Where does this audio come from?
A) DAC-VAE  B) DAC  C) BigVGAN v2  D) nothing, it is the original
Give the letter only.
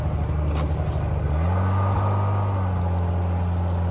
D